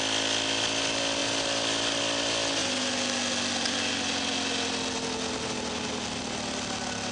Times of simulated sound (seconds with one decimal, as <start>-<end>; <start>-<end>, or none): none